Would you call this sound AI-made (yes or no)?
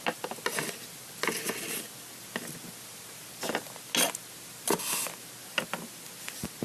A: no